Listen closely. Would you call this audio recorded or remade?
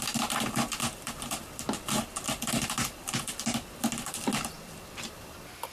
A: recorded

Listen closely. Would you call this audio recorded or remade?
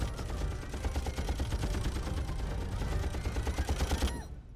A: recorded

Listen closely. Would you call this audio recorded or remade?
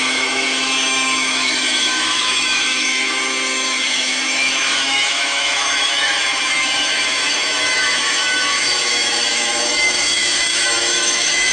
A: remade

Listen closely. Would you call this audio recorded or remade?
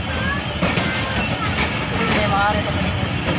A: recorded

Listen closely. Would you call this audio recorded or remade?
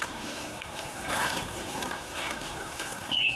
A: remade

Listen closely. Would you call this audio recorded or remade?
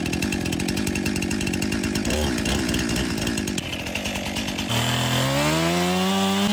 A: recorded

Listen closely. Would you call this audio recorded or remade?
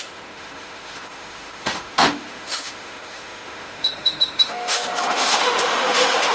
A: remade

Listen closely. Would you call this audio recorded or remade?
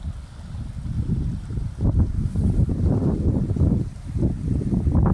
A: recorded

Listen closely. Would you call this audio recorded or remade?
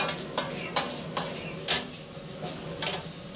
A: recorded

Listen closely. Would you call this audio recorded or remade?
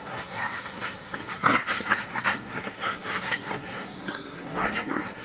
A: remade